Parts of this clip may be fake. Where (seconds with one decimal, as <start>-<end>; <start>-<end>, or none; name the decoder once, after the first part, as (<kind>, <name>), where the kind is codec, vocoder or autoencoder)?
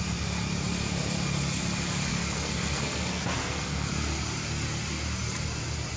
2.1-3.9 (codec, SNAC)